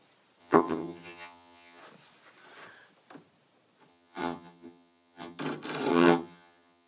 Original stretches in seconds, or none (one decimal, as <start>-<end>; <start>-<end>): 0.0-0.4; 1.8-3.9; 5.4-5.9